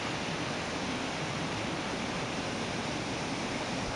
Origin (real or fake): real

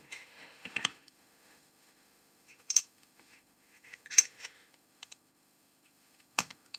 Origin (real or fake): fake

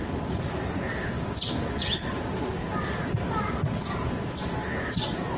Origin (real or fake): real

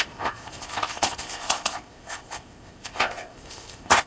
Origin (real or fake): fake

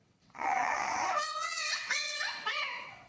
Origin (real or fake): fake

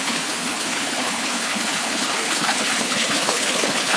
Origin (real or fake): fake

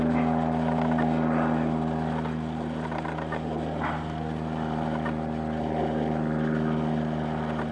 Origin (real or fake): real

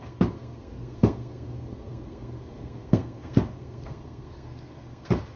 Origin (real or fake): fake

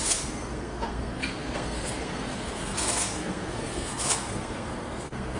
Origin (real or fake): fake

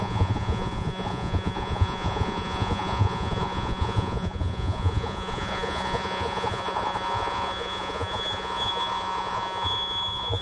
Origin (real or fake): fake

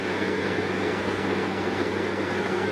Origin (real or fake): fake